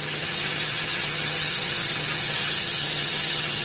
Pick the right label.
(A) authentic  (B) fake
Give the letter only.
B